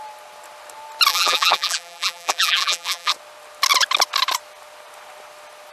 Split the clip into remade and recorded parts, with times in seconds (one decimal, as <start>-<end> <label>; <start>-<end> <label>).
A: 0.0-1.1 recorded; 1.1-3.1 remade; 3.1-5.7 recorded